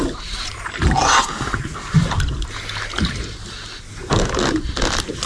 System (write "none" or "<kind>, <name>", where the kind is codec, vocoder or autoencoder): none